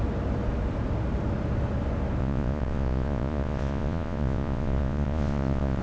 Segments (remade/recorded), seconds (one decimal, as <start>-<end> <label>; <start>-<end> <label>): 0.0-2.2 recorded; 2.2-5.8 remade